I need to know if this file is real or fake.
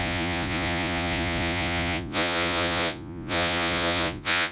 fake